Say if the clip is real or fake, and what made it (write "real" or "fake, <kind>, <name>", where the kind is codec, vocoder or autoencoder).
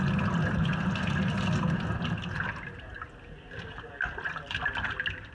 real